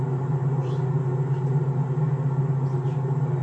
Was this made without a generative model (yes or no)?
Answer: yes